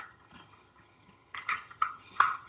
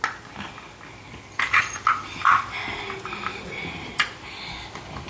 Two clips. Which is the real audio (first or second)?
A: second